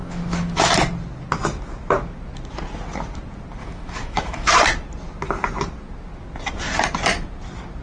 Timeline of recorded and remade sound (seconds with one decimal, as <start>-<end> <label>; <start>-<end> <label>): 0.0-0.6 remade; 0.6-3.6 recorded; 3.6-4.5 remade; 4.5-7.8 recorded